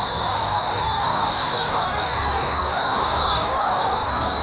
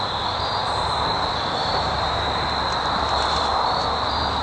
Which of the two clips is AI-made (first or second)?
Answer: first